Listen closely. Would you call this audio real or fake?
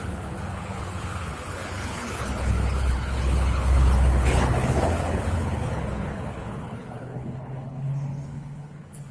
fake